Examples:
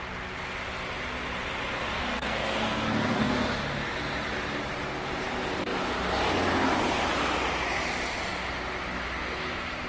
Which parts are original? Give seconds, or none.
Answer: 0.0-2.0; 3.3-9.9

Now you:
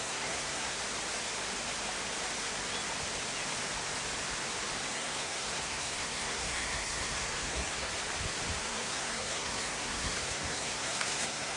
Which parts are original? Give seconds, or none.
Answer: 0.8-4.9; 7.9-8.6

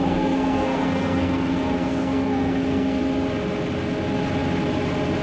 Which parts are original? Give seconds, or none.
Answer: 3.0-5.2

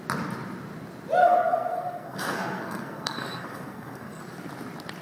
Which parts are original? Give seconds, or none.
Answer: 0.0-1.2; 4.2-5.0

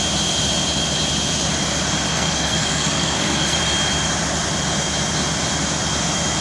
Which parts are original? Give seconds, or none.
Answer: 0.0-2.1; 3.6-6.4

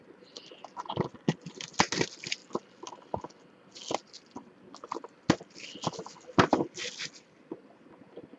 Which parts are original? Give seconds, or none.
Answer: 0.0-8.4